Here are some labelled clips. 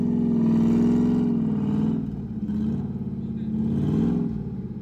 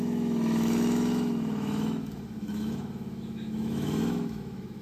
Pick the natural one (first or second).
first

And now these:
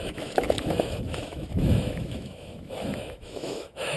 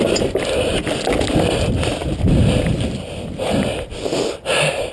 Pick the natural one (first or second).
second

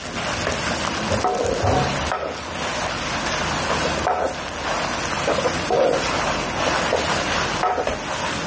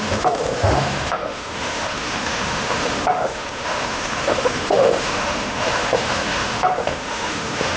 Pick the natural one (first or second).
first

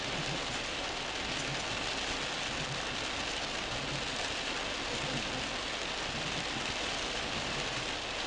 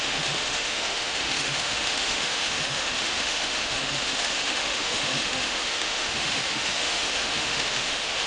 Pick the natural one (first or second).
first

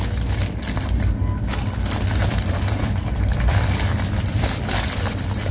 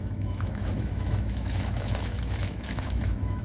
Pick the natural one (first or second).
first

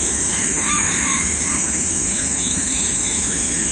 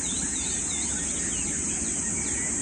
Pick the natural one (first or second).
second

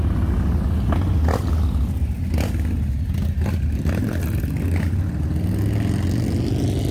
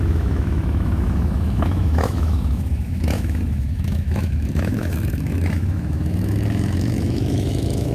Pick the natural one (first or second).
first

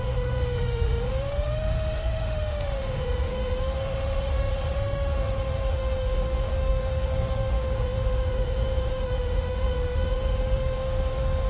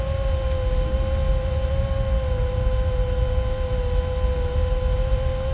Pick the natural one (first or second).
second